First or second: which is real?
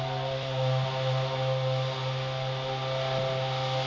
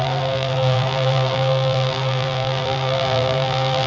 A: first